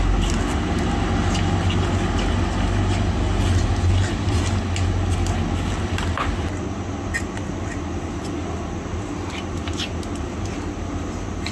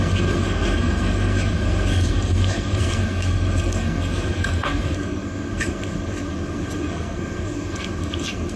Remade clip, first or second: second